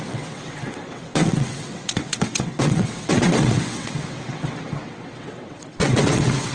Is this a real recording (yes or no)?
no